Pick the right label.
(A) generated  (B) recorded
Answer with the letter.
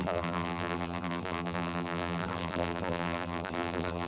A